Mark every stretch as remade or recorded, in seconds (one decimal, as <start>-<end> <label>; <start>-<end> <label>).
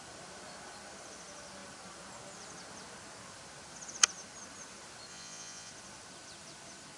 0.0-5.1 recorded; 5.1-5.7 remade; 5.7-7.0 recorded